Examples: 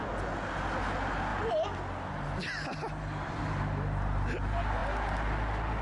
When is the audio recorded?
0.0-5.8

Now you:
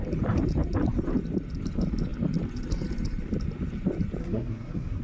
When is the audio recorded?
0.0-4.2